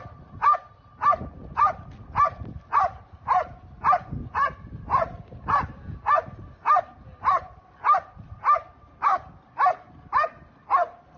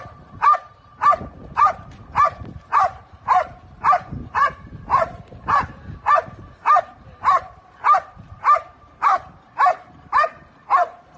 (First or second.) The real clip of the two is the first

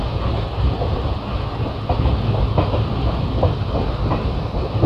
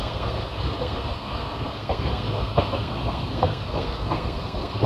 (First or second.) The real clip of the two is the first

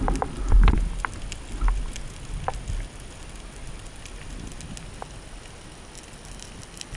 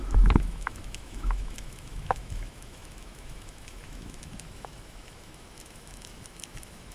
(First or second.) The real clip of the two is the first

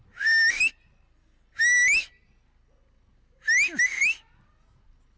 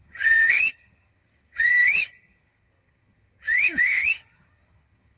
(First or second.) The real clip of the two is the first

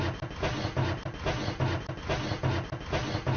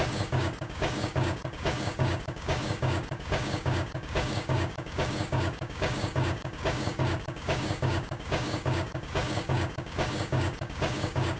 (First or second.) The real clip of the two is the first